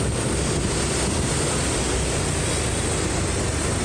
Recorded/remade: recorded